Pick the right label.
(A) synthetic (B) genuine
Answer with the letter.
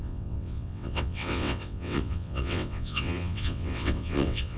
A